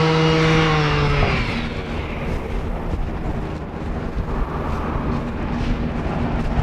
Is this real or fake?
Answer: real